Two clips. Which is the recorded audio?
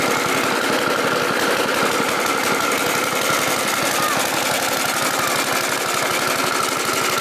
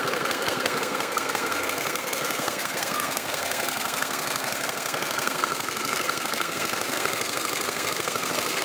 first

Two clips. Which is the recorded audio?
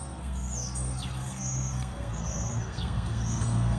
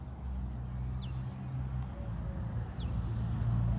second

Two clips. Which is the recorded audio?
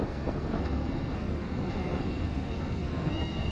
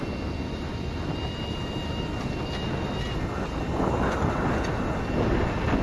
second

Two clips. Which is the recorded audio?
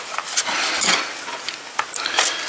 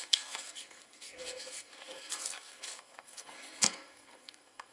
first